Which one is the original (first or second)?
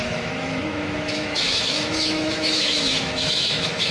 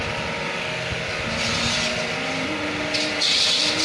second